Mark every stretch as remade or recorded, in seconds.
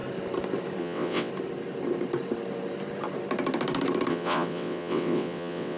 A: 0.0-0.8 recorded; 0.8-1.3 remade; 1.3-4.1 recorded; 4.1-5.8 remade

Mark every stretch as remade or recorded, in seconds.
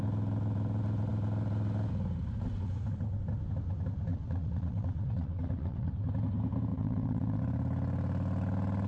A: 0.0-4.1 recorded; 4.1-5.9 remade; 5.9-6.7 recorded; 6.7-7.4 remade; 7.4-8.9 recorded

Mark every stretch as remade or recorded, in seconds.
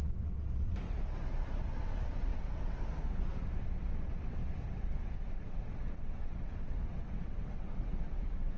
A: 0.0-0.7 remade; 0.7-1.5 recorded; 1.5-8.6 remade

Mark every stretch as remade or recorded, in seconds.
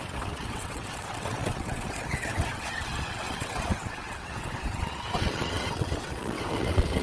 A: 0.0-7.0 remade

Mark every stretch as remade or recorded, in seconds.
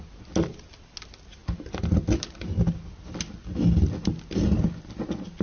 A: 0.0-5.4 recorded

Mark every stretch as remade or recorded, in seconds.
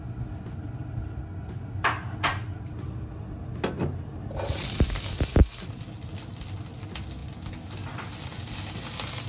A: 0.0-9.3 recorded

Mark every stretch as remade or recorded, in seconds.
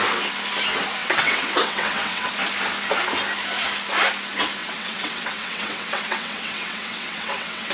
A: 0.0-1.0 recorded; 1.0-2.3 remade; 2.3-4.6 recorded; 4.6-7.7 remade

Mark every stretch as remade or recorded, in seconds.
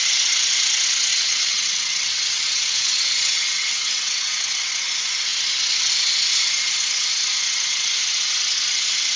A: 0.0-1.1 recorded; 1.1-4.7 remade; 4.7-9.2 recorded